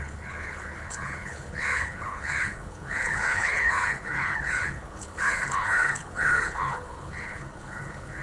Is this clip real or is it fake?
fake